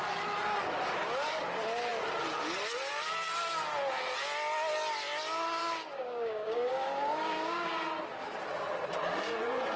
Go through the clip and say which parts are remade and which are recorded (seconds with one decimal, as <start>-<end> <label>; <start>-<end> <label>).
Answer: 0.0-5.6 recorded; 5.6-7.7 remade; 7.7-9.8 recorded